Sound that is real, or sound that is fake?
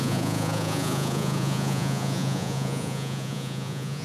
fake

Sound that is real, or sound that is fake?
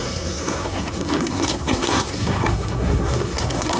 fake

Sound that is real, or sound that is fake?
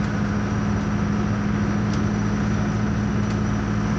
real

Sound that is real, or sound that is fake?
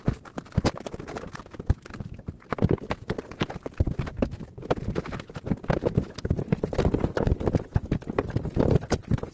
real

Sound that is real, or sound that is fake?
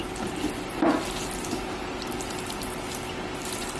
real